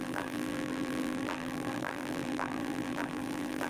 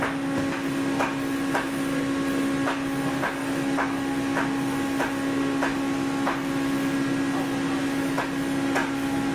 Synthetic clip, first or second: first